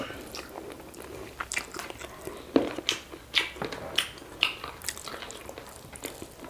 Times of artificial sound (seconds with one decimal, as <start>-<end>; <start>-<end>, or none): none